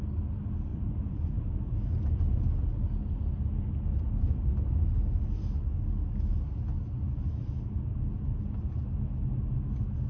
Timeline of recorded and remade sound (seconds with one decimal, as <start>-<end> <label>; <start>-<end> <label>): 0.0-0.7 recorded; 0.7-2.1 remade; 2.1-10.1 recorded

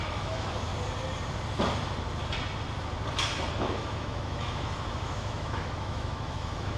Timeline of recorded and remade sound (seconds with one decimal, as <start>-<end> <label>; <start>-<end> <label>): 0.0-0.7 remade; 0.7-3.6 recorded; 3.6-6.8 remade

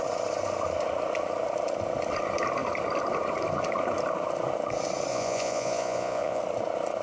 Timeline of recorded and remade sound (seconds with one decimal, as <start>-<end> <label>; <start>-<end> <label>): 0.0-5.1 recorded; 5.1-6.4 remade; 6.4-7.0 recorded

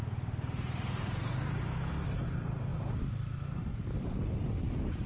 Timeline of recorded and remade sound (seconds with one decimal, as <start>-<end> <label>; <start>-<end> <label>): 0.0-1.9 remade; 1.9-5.1 recorded

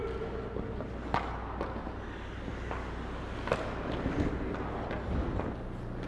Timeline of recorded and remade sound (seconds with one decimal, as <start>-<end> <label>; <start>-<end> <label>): 0.0-6.1 recorded

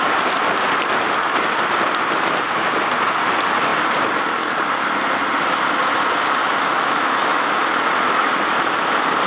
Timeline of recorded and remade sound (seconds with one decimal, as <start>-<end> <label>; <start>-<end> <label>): 0.0-6.4 recorded; 6.4-7.5 remade; 7.5-9.3 recorded

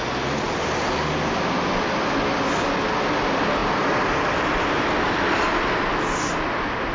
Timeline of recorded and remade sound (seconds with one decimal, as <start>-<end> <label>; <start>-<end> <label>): 0.0-6.9 recorded